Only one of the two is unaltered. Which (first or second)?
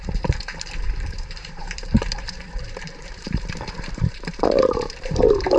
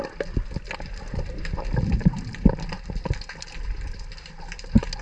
second